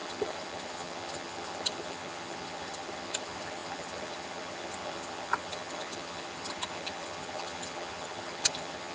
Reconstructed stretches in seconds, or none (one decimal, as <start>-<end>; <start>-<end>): 0.0-8.9